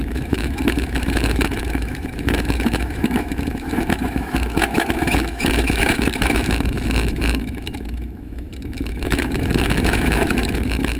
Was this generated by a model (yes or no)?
yes